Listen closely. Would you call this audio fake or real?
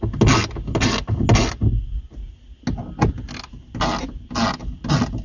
real